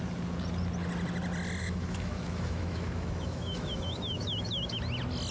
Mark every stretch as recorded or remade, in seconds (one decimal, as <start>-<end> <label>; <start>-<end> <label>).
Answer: 0.0-1.6 recorded; 1.6-4.8 remade; 4.8-5.3 recorded